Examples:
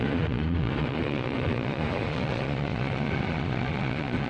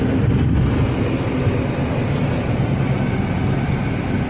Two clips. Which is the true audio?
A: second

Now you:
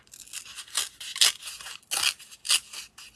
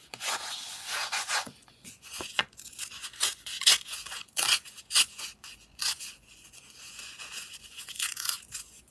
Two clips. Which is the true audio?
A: first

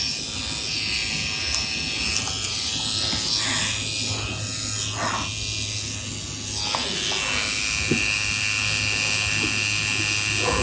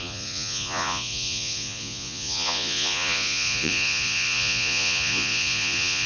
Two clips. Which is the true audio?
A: first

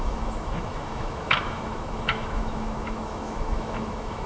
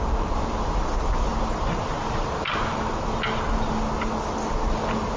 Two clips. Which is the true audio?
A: second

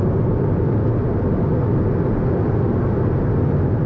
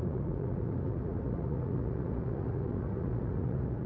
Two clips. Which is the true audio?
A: first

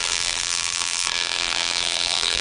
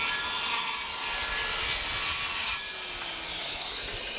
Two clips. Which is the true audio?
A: second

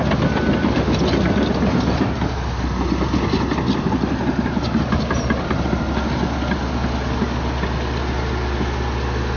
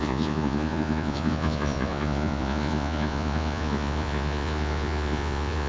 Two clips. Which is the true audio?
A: first